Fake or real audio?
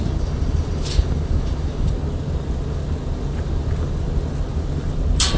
real